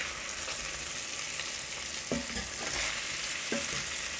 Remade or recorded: recorded